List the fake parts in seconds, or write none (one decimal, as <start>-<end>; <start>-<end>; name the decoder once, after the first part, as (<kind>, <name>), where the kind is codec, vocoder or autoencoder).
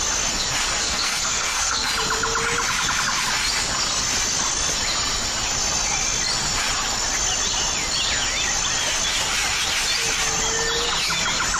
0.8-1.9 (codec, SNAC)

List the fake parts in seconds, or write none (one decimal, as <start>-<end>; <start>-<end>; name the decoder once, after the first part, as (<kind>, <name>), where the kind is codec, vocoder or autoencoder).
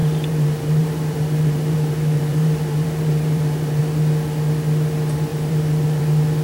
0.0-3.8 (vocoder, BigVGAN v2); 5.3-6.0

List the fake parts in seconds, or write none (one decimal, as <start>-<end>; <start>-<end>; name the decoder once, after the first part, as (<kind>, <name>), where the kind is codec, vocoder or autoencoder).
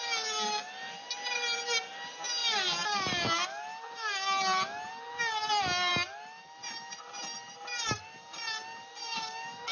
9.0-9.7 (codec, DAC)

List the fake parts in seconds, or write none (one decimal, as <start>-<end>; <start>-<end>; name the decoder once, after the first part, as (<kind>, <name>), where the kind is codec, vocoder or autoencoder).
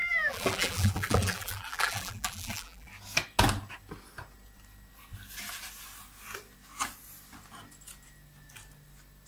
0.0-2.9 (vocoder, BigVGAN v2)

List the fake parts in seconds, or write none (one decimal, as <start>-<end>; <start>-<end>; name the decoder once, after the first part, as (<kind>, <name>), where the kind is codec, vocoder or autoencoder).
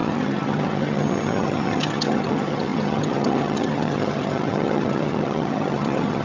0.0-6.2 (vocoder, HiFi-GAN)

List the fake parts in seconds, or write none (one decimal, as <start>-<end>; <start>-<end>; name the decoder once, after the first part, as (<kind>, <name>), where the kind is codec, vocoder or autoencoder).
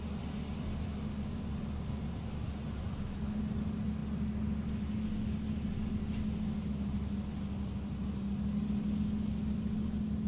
none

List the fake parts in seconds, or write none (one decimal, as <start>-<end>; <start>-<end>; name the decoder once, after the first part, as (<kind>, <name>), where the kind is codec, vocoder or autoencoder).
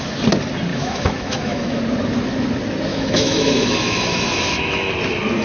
0.7-1.8 (autoencoder, DAC-VAE); 2.9-4.9